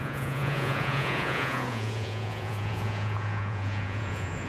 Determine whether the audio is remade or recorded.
remade